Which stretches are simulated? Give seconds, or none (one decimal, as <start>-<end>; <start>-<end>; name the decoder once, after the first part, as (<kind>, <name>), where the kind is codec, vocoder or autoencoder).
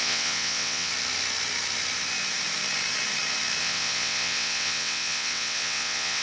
0.0-0.9 (vocoder, WaveNeXt); 3.6-6.2